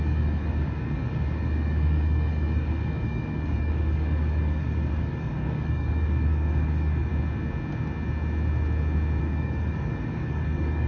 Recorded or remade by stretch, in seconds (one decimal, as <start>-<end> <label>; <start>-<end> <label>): 0.0-7.1 remade; 7.1-9.2 recorded; 9.2-10.9 remade